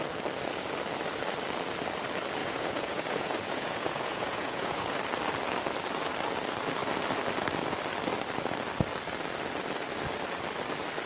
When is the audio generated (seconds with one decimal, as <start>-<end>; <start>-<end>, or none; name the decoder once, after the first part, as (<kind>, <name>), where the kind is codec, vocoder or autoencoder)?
2.4-5.0 (vocoder, Vocos)